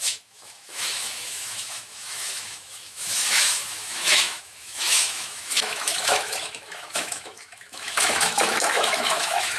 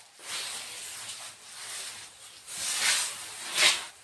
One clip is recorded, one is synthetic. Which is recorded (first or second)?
second